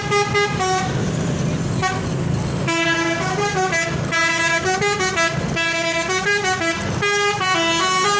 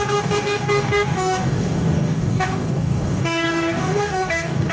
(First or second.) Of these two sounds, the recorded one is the first